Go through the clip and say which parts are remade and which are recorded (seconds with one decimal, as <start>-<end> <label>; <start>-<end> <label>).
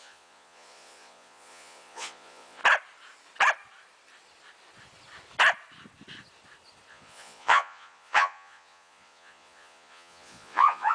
0.0-2.6 remade; 2.6-6.9 recorded; 6.9-10.9 remade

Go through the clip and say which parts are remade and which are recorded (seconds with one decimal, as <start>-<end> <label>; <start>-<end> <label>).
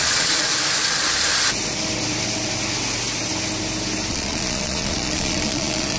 0.0-0.5 remade; 0.5-4.1 recorded; 4.1-6.0 remade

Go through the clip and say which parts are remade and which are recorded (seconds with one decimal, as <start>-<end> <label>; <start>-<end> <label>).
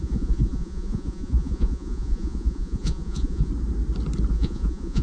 0.0-3.5 remade; 3.5-4.3 recorded; 4.3-5.0 remade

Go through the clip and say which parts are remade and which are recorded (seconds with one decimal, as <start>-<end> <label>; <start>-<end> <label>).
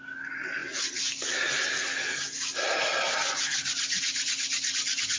0.0-5.2 recorded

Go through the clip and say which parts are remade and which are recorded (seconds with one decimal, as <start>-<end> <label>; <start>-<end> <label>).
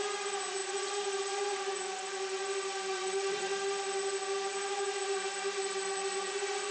0.0-2.9 recorded; 2.9-3.5 remade; 3.5-6.7 recorded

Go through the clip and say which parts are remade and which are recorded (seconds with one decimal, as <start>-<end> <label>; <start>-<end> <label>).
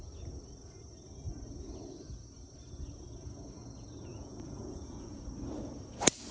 0.0-4.1 recorded; 4.1-5.2 remade; 5.2-6.3 recorded